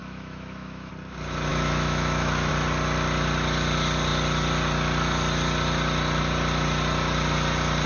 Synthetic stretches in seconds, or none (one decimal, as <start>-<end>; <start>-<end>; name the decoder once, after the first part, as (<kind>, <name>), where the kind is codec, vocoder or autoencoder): 0.0-0.9 (autoencoder, DAC-VAE); 1.5-2.5